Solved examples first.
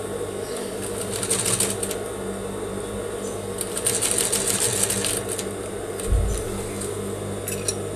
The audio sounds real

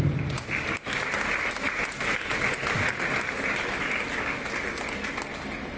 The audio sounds real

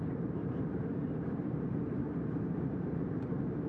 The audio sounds fake